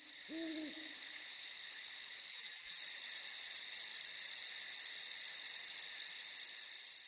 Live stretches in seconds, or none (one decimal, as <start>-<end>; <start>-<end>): 0.0-2.3; 2.8-7.1